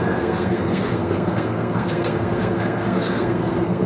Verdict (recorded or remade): remade